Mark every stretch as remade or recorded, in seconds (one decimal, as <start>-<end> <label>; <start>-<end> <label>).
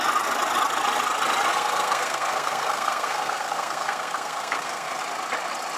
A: 0.0-1.5 recorded; 1.5-5.0 remade; 5.0-5.8 recorded